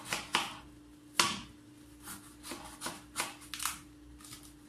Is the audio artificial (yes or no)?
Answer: no